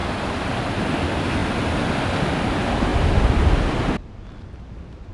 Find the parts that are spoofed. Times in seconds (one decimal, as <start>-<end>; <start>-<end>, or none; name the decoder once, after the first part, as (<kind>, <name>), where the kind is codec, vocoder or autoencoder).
none